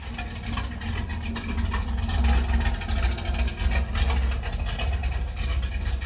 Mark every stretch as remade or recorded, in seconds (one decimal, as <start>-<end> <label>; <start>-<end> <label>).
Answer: 0.0-6.1 recorded